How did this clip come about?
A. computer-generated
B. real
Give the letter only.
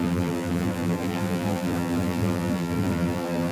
A